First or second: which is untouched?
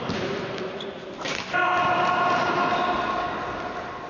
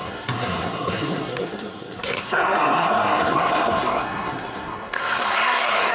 first